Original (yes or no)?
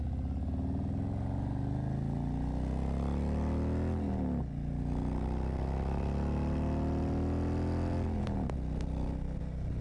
yes